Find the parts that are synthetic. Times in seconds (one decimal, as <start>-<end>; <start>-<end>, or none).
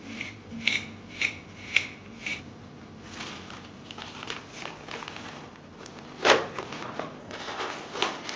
7.2-7.7